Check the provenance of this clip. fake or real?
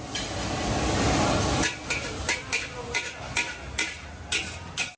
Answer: real